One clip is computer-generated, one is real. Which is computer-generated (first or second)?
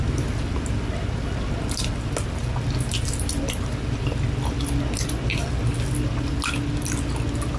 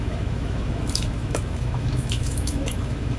second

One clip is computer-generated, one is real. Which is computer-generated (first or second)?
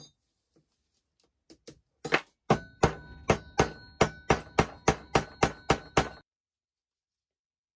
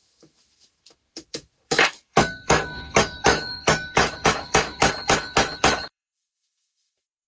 second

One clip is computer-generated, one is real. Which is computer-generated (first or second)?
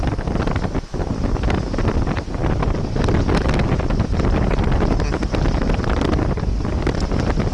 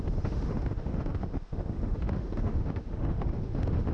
second